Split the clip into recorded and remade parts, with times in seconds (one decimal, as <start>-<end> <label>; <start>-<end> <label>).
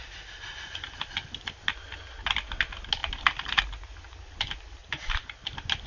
0.0-1.7 remade; 1.7-3.0 recorded; 3.0-3.6 remade; 3.6-4.8 recorded; 4.8-5.5 remade; 5.5-5.9 recorded